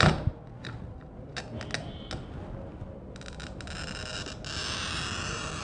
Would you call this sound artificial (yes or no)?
no